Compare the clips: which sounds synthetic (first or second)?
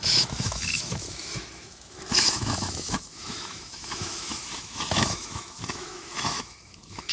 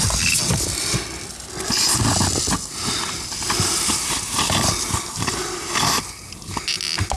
first